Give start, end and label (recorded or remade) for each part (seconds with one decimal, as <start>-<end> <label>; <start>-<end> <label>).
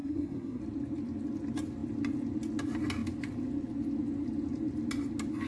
0.0-0.6 remade; 0.6-5.5 recorded